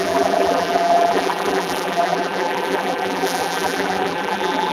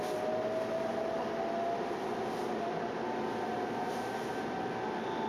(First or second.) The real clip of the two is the second